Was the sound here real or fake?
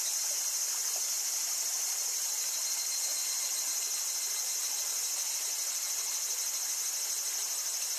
real